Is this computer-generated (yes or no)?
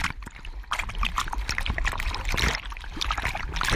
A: no